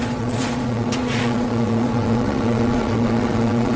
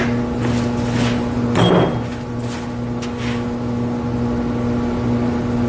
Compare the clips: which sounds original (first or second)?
second